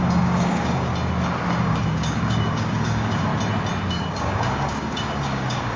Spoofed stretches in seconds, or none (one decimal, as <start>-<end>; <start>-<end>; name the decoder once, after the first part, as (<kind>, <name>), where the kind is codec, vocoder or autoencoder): 0.0-0.9 (codec, DAC); 1.6-3.3; 3.9-5.8